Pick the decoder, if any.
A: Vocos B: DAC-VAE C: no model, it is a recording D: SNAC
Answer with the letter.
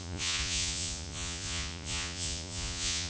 A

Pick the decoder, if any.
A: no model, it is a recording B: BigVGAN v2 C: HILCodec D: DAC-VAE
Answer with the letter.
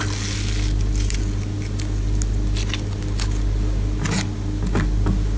A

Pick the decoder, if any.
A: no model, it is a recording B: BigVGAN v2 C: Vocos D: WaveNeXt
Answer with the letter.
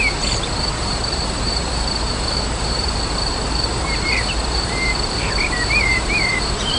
B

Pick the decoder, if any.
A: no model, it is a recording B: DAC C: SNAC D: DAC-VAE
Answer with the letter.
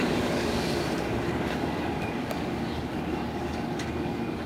B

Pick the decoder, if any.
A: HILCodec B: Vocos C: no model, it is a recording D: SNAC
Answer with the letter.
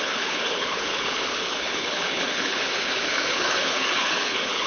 A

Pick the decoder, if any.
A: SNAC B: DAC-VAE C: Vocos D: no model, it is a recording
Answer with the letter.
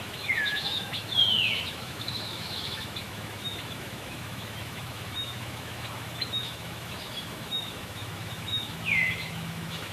B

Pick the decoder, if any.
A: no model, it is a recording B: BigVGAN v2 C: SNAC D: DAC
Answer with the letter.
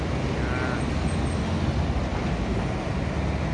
A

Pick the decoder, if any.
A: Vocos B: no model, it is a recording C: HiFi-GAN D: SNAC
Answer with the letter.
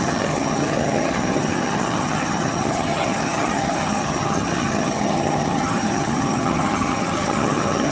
C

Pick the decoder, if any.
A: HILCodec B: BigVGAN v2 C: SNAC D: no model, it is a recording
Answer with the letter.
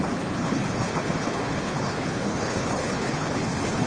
A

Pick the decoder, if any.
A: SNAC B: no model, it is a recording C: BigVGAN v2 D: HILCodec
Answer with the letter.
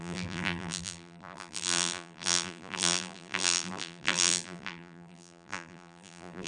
C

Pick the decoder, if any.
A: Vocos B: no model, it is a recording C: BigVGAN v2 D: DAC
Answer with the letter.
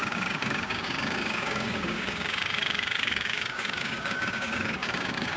D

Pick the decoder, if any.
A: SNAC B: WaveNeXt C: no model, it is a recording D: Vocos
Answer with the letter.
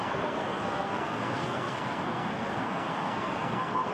A